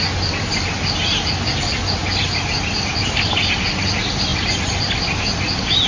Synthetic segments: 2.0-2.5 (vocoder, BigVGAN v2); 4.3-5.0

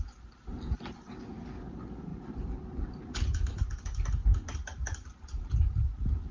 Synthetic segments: none

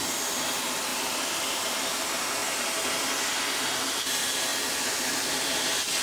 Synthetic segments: 0.9-1.8 (vocoder, BigVGAN v2); 4.5-5.6